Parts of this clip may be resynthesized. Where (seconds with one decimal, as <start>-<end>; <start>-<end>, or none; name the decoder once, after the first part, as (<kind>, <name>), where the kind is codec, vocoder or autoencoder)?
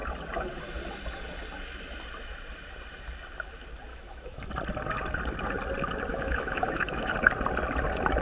3.9-4.4 (autoencoder, DAC-VAE); 6.1-7.1